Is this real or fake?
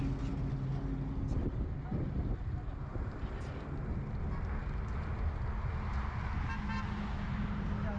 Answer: real